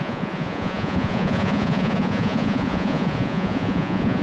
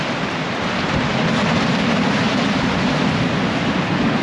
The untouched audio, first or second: second